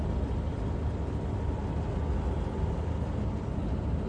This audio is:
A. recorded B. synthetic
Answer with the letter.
A